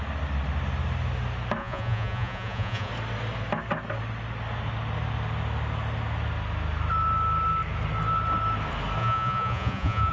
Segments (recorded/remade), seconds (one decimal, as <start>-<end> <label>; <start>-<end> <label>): 0.0-1.6 recorded; 1.6-2.9 remade; 2.9-9.0 recorded; 9.0-10.1 remade